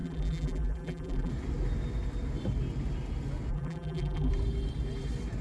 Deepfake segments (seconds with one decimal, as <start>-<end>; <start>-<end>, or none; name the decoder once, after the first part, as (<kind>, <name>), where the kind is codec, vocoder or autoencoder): 0.0-1.3 (vocoder, BigVGAN v2); 3.5-4.3